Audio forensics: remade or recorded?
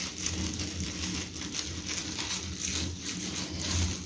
recorded